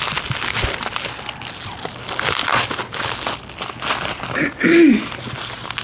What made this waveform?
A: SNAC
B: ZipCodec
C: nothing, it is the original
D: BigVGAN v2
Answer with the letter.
C